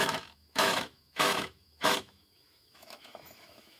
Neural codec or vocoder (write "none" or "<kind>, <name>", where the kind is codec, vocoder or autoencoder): autoencoder, DAC-VAE